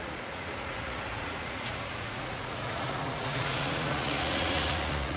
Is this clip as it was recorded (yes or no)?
no